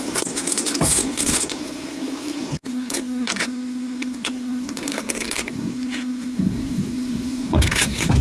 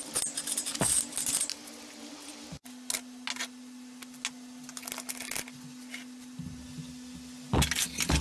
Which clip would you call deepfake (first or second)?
first